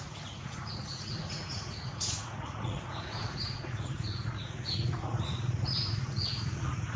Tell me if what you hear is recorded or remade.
remade